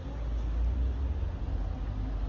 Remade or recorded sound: recorded